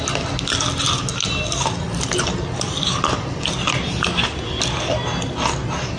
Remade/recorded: recorded